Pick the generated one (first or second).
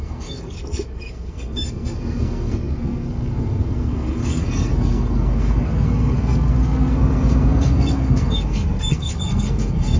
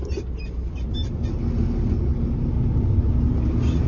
first